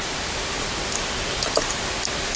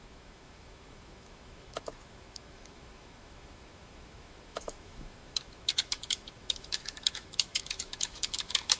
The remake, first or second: second